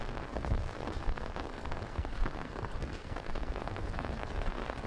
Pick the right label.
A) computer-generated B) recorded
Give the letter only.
A